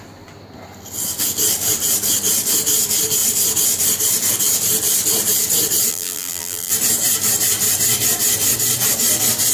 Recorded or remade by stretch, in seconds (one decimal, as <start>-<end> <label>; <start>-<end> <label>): 0.0-5.9 recorded; 5.9-6.7 remade; 6.7-9.5 recorded